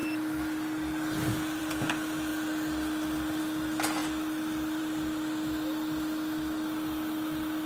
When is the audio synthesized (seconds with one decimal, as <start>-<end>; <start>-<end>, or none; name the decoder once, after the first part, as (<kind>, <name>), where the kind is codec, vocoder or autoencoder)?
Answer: none